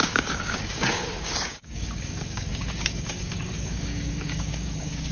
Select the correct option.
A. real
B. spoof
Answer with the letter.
B